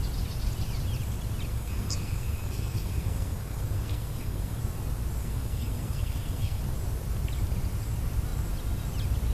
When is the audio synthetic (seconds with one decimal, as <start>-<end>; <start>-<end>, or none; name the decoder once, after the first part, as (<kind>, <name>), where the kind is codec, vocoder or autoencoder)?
1.5-4.6 (codec, SNAC); 5.2-6.6